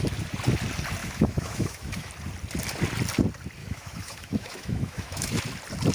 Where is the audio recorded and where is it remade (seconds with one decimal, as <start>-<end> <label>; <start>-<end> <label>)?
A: 0.0-1.0 recorded; 1.0-2.1 remade; 2.1-3.6 recorded; 3.6-5.4 remade; 5.4-5.9 recorded